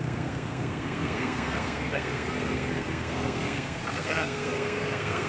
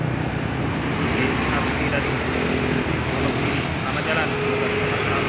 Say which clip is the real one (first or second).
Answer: second